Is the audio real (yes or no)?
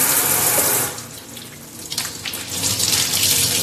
yes